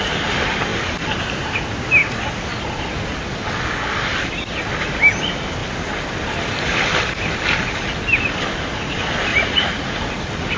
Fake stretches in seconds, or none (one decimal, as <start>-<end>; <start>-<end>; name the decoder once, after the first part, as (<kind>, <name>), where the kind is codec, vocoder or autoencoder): 9.3-10.0 (vocoder, Vocos)